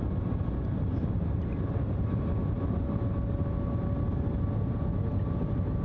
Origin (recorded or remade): recorded